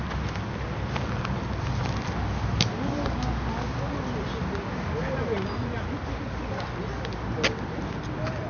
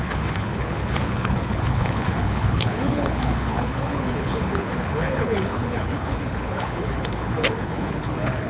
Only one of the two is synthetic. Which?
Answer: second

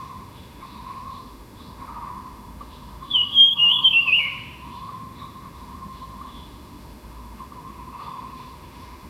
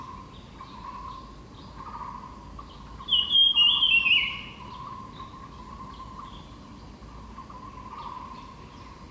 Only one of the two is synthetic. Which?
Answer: first